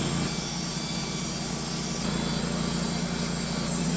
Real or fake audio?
real